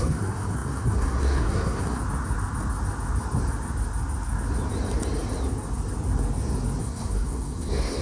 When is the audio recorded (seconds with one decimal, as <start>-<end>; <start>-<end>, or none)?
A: 2.0-6.8